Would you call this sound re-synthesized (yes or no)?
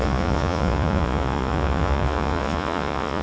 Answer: yes